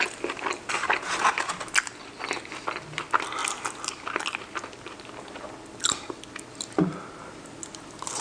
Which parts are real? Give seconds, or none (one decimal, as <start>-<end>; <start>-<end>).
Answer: 0.0-8.2